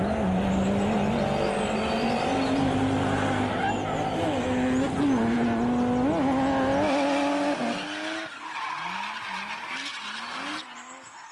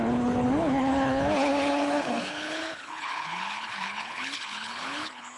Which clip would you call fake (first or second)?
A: second